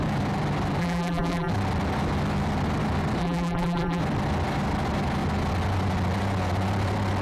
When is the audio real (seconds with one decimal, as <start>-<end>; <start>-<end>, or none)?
0.0-0.8; 1.5-3.2; 4.0-7.2